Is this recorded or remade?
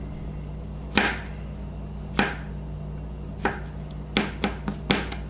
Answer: recorded